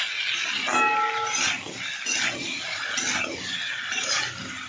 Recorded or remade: recorded